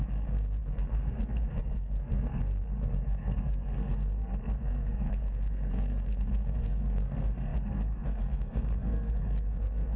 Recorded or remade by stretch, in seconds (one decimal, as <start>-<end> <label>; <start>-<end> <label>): 0.0-10.0 remade